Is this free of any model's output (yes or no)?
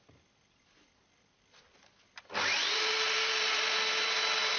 yes